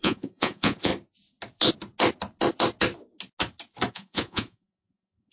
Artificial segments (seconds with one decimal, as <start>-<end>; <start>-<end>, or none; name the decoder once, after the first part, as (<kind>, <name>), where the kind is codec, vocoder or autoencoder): 0.0-0.9 (vocoder, Vocos); 3.9-5.3

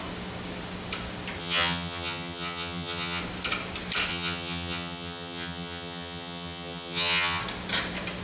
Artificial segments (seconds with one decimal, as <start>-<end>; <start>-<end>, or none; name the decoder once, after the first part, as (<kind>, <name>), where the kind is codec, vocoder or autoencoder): 1.4-3.2 (vocoder, HiFi-GAN); 4.1-7.4

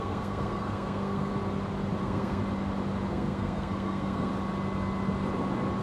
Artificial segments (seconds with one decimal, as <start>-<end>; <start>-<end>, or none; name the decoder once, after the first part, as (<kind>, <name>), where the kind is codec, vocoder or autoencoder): 0.0-1.3 (codec, SNAC); 2.0-2.4; 3.1-4.3

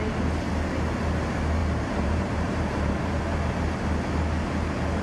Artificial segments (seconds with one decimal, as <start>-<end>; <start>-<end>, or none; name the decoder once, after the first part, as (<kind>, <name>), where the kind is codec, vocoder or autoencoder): 1.6-3.2 (vocoder, BigVGAN v2)

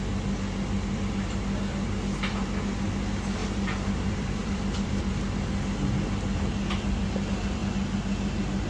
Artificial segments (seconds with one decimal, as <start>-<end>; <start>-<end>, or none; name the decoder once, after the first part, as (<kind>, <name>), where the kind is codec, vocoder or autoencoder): 3.4-5.0 (vocoder, BigVGAN v2)

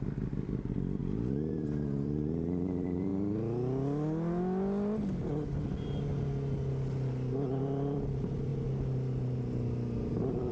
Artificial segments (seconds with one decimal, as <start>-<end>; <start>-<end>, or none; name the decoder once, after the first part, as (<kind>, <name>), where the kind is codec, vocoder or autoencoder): 0.0-1.0 (vocoder, BigVGAN v2); 1.5-3.1; 7.6-8.5; 10.1-10.5

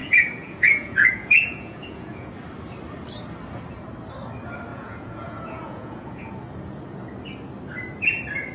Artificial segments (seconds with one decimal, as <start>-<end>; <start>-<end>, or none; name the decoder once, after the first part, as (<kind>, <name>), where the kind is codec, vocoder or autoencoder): 0.0-2.3 (vocoder, Vocos); 4.7-6.3